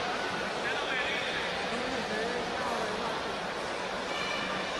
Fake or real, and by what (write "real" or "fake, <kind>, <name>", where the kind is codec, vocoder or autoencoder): real